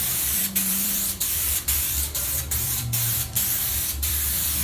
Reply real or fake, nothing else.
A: fake